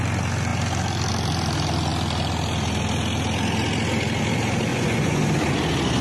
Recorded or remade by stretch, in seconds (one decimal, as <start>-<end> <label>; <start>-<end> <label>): 0.0-4.7 recorded; 4.7-5.2 remade; 5.2-6.0 recorded